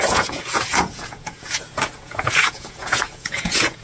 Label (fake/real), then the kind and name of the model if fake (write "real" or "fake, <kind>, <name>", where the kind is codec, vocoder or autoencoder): fake, vocoder, Vocos